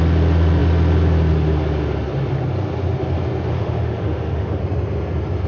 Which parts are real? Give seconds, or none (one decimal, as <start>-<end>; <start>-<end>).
0.0-3.5; 4.6-5.5